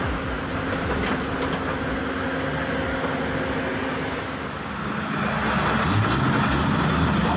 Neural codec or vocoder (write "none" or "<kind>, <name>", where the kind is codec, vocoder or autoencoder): none